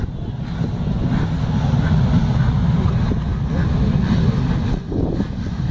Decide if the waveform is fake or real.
real